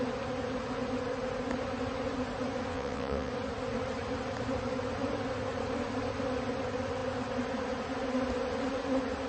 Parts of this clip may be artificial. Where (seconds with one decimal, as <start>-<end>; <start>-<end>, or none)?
2.7-3.3